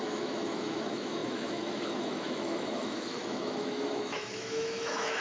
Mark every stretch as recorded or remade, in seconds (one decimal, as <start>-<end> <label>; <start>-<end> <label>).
0.0-5.2 remade

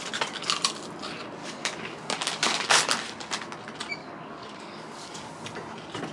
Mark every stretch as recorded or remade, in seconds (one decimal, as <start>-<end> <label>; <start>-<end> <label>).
0.0-1.4 recorded; 1.4-2.8 remade; 2.8-4.0 recorded; 4.0-5.3 remade; 5.3-6.1 recorded

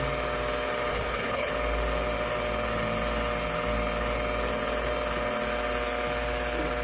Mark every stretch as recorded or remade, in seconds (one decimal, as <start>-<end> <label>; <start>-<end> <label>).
0.0-0.9 recorded; 0.9-1.5 remade; 1.5-6.8 recorded

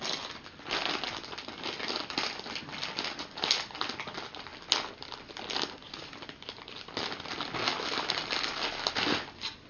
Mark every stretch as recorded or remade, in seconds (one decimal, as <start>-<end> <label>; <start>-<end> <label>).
0.0-9.7 recorded

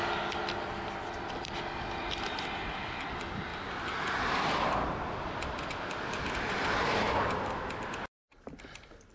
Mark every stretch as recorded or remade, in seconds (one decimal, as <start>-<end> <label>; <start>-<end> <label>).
0.0-9.1 recorded